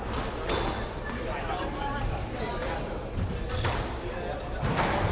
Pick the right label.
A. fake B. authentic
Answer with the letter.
B